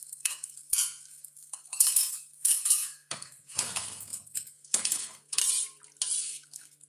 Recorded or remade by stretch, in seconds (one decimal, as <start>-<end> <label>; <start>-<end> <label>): 0.0-5.4 remade; 5.4-6.2 recorded; 6.2-6.9 remade